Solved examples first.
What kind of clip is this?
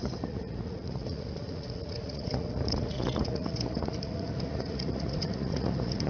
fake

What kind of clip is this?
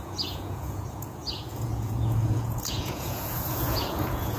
fake